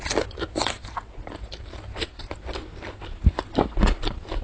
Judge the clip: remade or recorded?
recorded